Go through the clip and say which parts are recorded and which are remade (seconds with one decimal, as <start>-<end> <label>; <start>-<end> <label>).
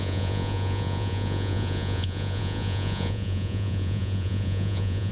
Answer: 0.0-5.1 remade